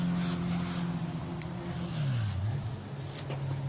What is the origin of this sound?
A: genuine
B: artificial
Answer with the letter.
A